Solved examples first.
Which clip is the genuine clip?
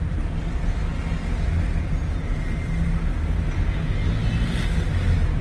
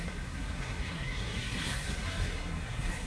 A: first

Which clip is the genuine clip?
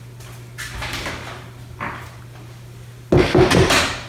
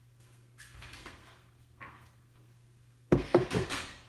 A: first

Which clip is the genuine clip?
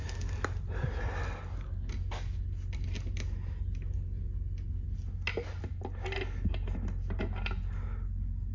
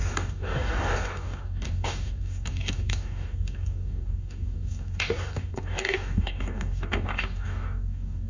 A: first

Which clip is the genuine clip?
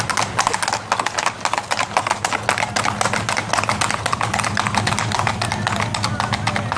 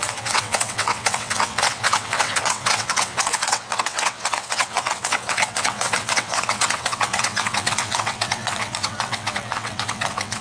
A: first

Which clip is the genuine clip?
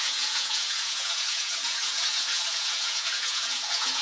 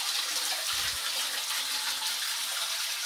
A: second